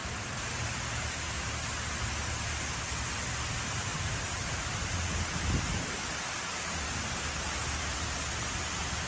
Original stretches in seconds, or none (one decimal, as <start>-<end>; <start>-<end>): 0.7-3.9; 4.9-9.1

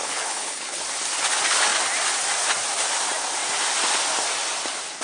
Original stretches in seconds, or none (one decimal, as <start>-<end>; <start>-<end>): 0.8-5.0

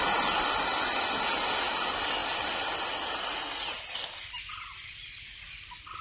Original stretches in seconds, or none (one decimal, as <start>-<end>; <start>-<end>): 0.0-6.0

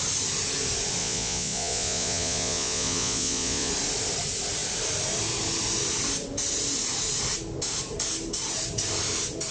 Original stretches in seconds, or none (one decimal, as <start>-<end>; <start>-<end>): 0.0-1.0; 3.7-9.5

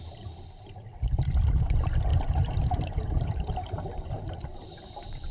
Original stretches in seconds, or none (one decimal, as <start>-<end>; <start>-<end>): 0.0-2.1

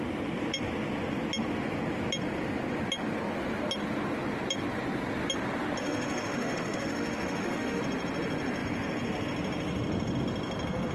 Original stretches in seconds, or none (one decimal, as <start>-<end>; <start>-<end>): 0.0-5.8; 7.8-10.9